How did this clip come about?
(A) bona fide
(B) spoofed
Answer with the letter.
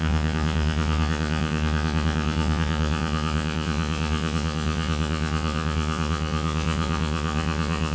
B